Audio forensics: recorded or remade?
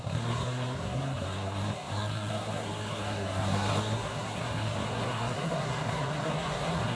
remade